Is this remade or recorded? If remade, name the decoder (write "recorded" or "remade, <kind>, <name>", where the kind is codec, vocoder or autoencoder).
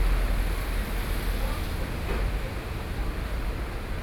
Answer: recorded